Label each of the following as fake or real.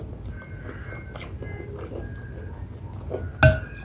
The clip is real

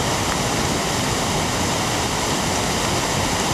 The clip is real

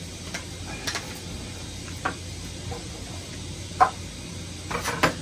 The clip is real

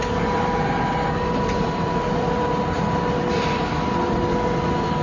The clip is real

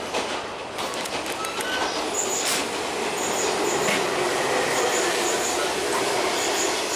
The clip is real